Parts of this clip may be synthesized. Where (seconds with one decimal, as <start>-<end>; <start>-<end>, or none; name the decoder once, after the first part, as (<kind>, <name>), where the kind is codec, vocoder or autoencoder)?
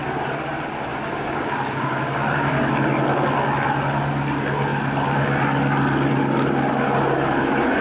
0.9-2.7 (codec, DAC)